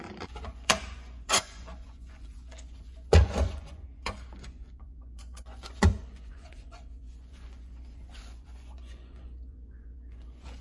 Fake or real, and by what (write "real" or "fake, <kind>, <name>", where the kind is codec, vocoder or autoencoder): fake, vocoder, Vocos